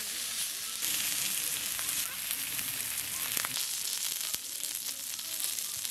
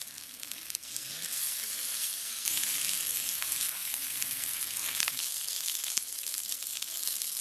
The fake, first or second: second